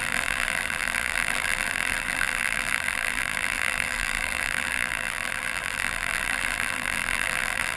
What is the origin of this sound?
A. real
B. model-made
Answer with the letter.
B